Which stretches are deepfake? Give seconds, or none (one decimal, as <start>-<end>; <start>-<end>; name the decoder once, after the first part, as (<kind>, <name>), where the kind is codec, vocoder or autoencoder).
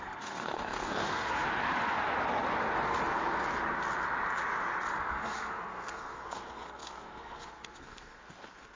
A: 0.0-1.4 (codec, SNAC); 5.1-8.8